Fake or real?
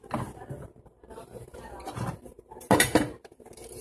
fake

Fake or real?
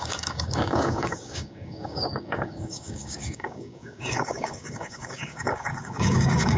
fake